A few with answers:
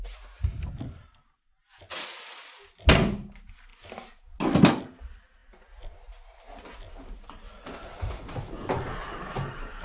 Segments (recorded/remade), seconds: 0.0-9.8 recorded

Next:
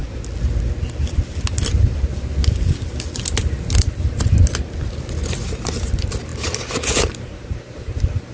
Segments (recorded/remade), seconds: 0.0-8.3 recorded

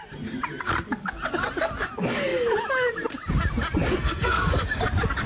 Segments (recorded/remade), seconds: 0.0-4.0 recorded; 4.0-4.6 remade; 4.6-5.3 recorded

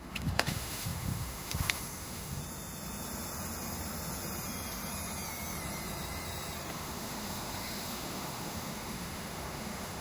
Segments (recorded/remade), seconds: 0.0-2.4 remade; 2.4-6.7 recorded; 6.7-10.0 remade

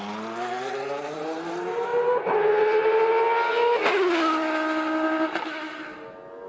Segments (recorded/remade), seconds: 0.0-6.5 recorded

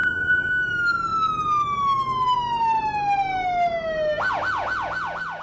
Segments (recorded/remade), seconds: 0.0-0.5 remade; 0.5-5.4 recorded

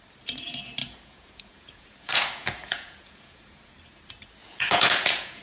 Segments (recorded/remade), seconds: 0.0-0.8 recorded; 0.8-3.7 remade; 3.7-4.4 recorded; 4.4-5.4 remade

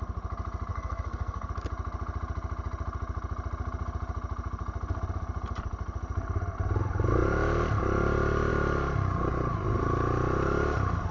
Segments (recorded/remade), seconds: 0.0-0.7 recorded; 0.7-1.5 remade; 1.5-11.1 recorded